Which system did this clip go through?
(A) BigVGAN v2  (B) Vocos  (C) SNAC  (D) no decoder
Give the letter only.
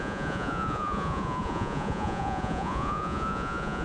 B